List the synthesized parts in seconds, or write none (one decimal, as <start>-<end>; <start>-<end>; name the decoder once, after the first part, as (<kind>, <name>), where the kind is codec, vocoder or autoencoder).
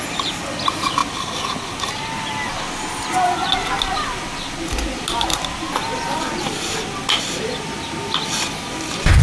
none